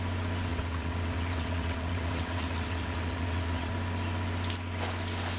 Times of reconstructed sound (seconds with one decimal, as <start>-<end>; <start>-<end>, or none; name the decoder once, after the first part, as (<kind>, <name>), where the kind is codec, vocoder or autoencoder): 0.5-3.7 (vocoder, WaveNeXt)